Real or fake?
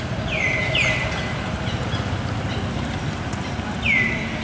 real